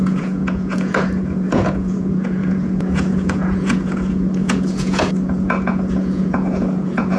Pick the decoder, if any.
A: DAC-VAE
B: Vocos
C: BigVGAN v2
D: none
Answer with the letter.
B